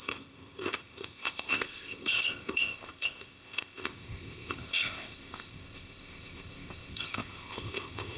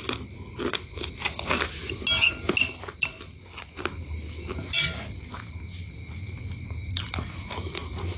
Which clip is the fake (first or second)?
first